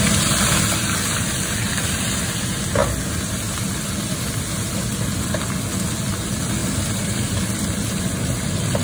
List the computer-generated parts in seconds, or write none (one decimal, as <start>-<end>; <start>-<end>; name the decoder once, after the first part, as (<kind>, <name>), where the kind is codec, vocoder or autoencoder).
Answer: 6.6-8.0 (vocoder, BigVGAN v2)